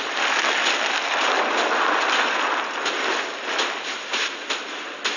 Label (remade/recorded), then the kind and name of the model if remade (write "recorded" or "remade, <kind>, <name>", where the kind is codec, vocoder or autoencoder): recorded